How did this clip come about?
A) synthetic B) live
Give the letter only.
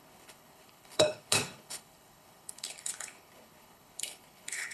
A